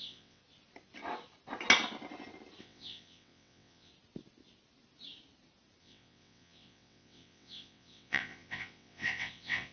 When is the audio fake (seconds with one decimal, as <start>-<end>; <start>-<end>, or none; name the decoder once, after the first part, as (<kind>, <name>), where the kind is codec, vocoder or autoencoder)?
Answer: 0.0-0.4 (vocoder, WaveNeXt); 2.6-3.9; 5.8-9.7